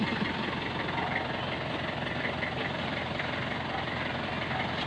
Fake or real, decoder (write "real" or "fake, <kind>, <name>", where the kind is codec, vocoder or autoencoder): real